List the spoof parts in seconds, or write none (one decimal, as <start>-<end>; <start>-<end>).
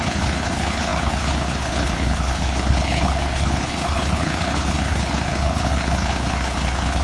0.0-7.0